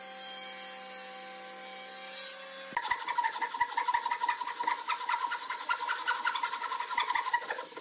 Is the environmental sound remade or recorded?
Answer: recorded